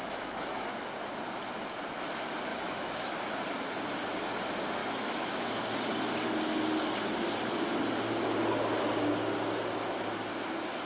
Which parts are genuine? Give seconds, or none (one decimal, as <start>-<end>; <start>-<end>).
0.8-2.5; 3.2-4.8; 5.5-10.9

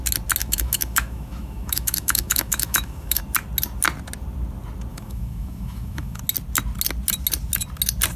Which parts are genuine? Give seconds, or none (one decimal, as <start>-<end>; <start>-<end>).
0.0-0.4; 3.2-4.9; 6.2-8.2